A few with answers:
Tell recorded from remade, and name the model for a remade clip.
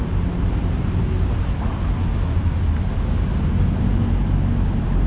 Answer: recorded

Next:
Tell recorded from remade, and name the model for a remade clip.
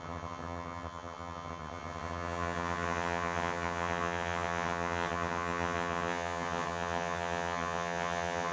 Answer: remade, vocoder, HiFi-GAN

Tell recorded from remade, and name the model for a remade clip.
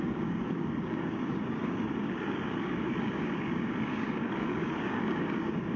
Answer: remade, codec, DAC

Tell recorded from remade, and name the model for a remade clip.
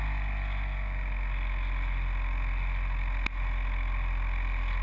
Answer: recorded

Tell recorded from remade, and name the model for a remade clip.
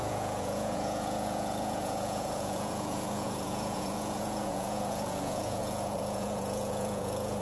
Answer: remade, vocoder, Vocos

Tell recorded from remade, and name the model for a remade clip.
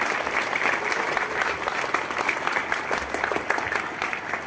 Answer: recorded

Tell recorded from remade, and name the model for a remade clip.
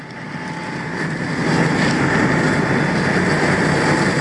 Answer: recorded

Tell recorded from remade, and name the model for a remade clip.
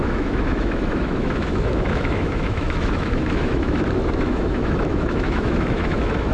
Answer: remade, autoencoder, DAC-VAE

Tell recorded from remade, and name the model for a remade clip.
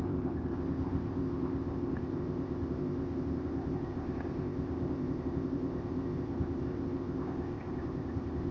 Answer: remade, codec, ZipCodec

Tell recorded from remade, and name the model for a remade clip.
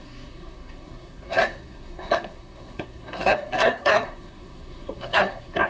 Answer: remade, codec, SNAC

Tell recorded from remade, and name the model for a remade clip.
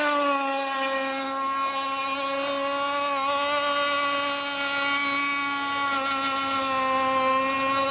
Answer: recorded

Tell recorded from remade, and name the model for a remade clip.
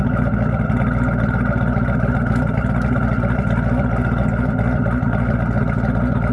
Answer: recorded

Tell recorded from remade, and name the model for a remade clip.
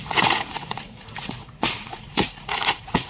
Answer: remade, vocoder, Vocos